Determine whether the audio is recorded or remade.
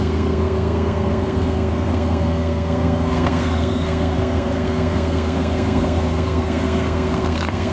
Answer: remade